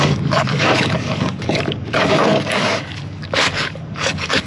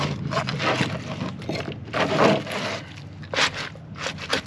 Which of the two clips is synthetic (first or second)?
first